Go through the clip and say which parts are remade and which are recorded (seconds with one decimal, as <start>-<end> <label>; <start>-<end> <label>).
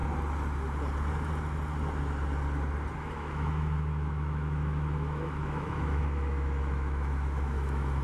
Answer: 0.0-3.0 recorded; 3.0-8.0 remade